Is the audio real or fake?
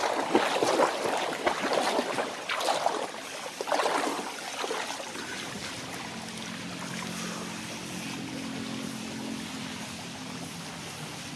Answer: real